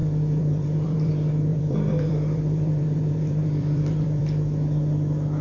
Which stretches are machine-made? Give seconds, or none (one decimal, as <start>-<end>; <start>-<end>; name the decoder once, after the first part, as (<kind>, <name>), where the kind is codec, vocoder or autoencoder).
0.0-1.1 (vocoder, BigVGAN v2); 1.5-4.2